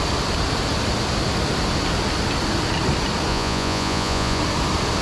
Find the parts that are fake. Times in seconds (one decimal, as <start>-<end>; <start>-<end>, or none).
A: 3.3-4.4